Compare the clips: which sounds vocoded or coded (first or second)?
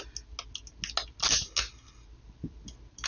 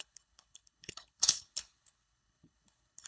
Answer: second